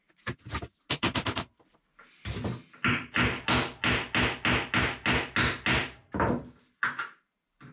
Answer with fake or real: real